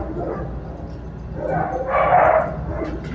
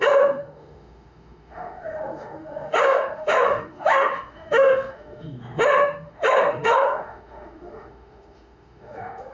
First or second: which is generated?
second